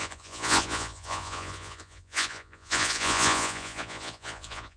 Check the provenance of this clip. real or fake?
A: fake